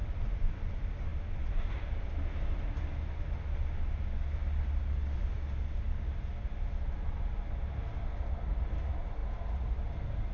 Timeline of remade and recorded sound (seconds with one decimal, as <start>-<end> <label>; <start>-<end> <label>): 0.0-10.3 recorded